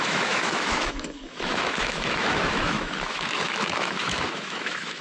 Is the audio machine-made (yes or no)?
yes